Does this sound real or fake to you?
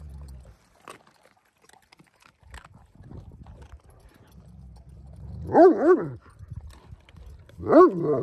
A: real